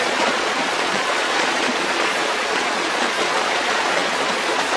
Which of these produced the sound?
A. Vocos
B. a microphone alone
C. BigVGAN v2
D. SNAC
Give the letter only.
A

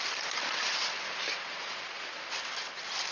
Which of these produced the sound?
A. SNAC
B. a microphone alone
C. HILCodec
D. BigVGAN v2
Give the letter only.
B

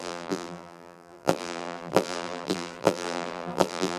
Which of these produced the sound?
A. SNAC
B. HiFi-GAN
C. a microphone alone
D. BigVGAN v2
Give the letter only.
D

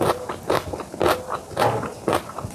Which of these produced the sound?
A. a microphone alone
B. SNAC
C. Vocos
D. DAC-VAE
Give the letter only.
A